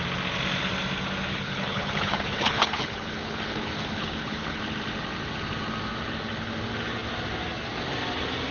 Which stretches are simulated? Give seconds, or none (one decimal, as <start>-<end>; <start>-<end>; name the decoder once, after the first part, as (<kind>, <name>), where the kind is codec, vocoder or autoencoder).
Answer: 1.3-4.6 (codec, HILCodec)